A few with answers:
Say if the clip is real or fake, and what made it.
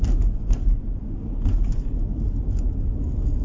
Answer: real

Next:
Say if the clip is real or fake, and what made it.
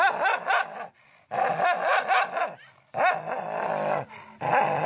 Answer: real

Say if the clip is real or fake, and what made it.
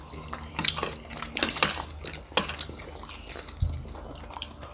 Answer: real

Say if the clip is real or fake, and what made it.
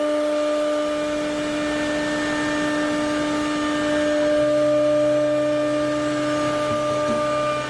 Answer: real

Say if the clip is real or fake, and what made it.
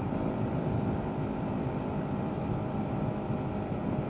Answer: fake, vocoder, BigVGAN v2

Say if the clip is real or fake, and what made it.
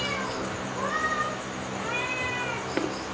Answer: real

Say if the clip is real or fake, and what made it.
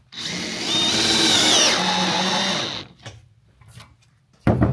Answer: real